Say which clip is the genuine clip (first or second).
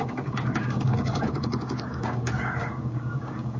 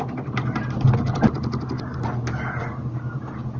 second